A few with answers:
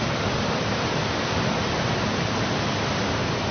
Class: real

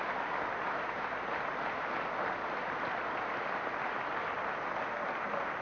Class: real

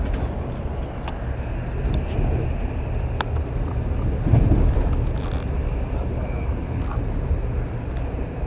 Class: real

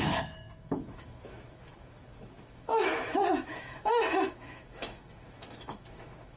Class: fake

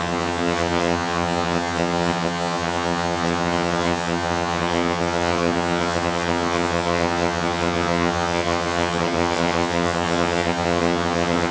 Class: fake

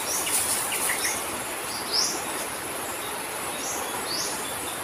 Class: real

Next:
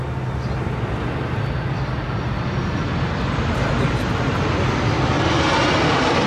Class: real